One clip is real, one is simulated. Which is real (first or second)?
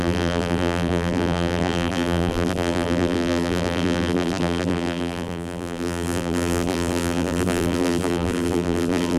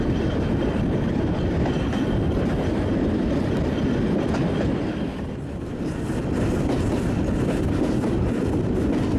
second